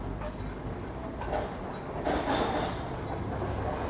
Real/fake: real